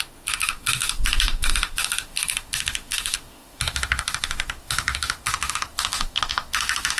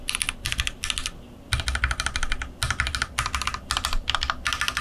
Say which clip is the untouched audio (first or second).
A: second